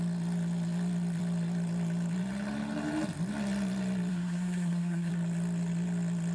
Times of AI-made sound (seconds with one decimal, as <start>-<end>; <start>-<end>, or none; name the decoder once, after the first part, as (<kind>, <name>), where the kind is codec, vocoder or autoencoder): 4.1-5.1 (codec, SNAC)